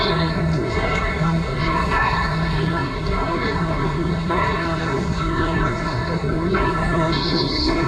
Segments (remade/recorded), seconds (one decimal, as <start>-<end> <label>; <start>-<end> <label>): 0.0-7.9 remade